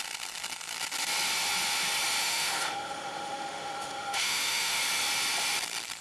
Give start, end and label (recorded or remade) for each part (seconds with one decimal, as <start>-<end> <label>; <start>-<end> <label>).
0.0-2.2 recorded; 2.2-4.8 remade; 4.8-6.0 recorded